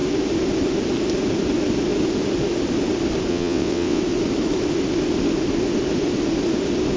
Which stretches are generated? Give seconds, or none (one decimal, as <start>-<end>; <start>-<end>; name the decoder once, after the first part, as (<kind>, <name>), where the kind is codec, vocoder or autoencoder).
3.3-4.0 (vocoder, WaveNeXt)